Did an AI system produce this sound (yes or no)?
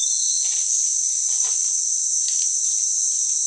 no